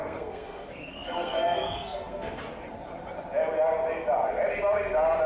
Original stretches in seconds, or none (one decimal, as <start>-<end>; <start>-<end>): 2.4-5.3